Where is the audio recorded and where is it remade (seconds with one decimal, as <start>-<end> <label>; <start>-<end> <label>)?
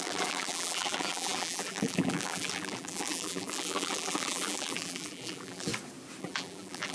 0.0-5.7 remade; 5.7-6.2 recorded; 6.2-6.9 remade